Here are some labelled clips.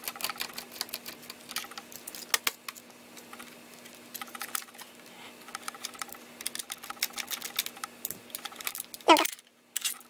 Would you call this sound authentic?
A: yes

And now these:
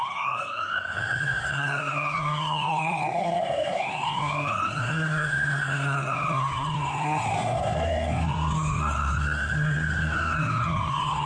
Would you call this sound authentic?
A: no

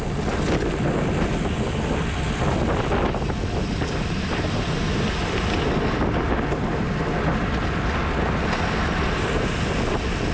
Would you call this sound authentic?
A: yes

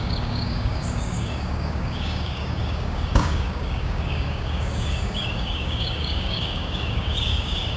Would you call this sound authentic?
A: no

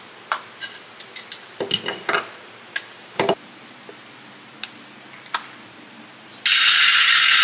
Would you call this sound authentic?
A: yes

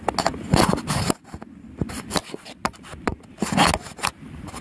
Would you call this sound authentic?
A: yes